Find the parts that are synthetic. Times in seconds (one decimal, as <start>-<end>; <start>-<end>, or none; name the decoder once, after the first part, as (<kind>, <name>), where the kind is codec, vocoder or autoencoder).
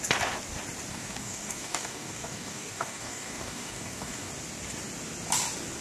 0.9-4.3 (codec, DAC)